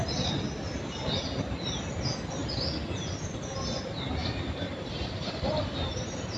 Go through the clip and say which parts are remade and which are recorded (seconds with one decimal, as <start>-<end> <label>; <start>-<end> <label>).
0.0-6.4 recorded